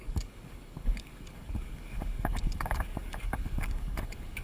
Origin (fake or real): fake